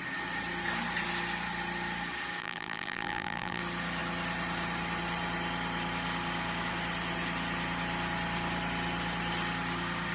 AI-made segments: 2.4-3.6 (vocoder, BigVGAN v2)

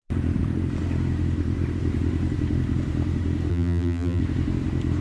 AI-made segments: 3.5-4.2 (vocoder, BigVGAN v2)

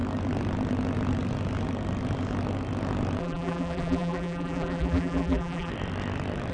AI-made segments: 3.2-5.7 (vocoder, BigVGAN v2)

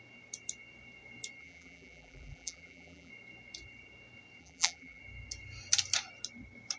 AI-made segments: 1.4-3.1 (vocoder, BigVGAN v2); 4.4-5.0